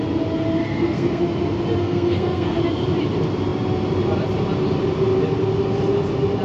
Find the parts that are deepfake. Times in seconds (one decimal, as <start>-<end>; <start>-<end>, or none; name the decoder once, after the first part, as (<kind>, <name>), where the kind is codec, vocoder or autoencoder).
0.6-1.2 (codec, SNAC); 1.8-2.6